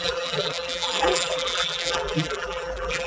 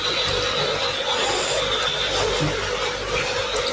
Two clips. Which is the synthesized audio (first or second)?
first